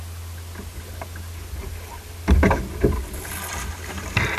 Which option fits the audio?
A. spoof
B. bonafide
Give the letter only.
B